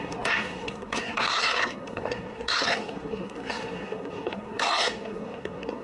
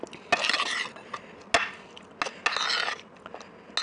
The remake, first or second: first